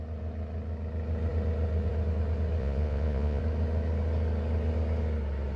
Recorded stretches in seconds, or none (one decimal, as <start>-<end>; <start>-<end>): 0.0-2.6; 3.4-5.6